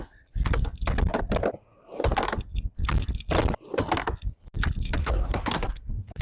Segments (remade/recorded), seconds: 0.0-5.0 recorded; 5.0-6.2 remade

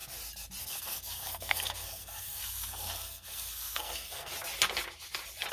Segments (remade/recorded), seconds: 0.0-0.6 recorded; 0.6-4.3 remade; 4.3-5.5 recorded

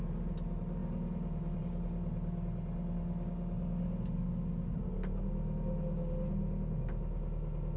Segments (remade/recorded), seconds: 0.0-7.8 recorded